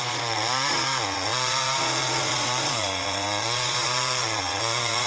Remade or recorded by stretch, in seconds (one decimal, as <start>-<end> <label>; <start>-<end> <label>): 0.0-5.1 remade